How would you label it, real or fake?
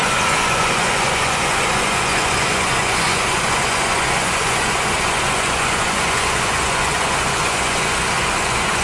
fake